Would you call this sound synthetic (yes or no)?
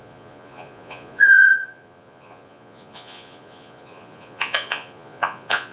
yes